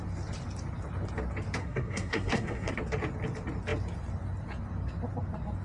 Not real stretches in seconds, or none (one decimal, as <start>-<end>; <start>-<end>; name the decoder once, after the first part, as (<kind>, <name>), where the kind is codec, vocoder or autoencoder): 1.6-2.7 (codec, SNAC)